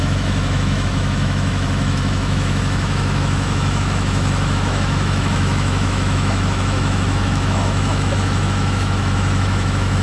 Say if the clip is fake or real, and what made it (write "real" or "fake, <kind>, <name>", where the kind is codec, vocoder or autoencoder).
fake, autoencoder, DAC-VAE